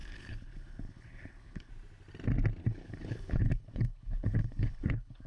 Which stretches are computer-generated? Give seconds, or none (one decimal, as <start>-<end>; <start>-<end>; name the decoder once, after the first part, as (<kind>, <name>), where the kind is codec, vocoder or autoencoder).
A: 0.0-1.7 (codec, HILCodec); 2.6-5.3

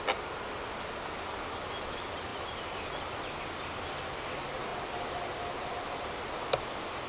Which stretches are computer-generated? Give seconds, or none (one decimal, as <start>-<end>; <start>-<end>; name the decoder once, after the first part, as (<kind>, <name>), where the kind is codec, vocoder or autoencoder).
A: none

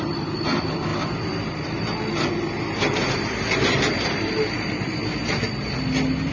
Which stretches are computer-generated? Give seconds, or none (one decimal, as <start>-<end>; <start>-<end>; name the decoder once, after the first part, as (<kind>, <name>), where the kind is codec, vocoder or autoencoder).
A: none

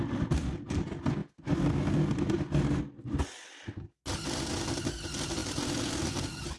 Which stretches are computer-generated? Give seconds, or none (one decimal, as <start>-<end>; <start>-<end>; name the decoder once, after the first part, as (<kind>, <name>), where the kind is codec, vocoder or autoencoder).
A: none